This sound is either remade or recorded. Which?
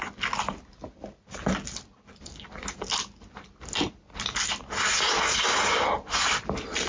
recorded